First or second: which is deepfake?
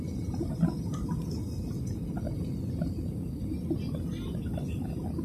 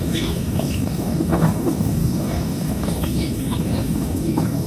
second